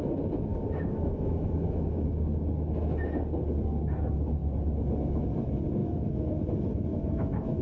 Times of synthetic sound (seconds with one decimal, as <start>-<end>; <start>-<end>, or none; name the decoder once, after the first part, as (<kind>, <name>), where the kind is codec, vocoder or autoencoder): 0.5-2.2 (autoencoder, DAC-VAE); 5.8-6.4; 6.9-7.6